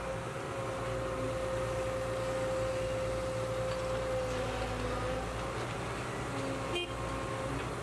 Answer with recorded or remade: recorded